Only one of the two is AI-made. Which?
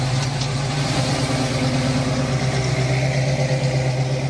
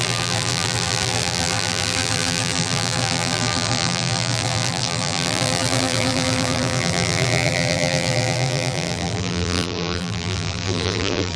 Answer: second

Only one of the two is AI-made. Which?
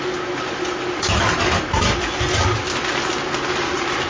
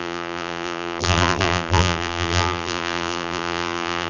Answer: second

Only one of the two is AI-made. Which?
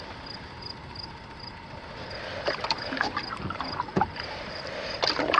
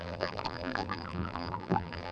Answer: second